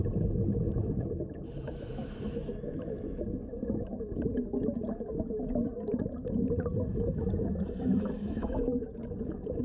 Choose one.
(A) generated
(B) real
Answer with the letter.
A